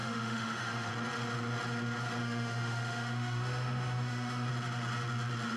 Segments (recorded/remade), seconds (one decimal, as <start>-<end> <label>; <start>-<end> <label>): 0.0-0.9 remade; 0.9-2.2 recorded; 2.2-4.5 remade; 4.5-5.6 recorded